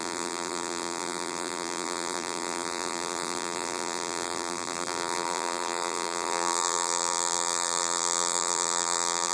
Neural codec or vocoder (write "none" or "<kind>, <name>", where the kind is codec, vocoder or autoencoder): vocoder, BigVGAN v2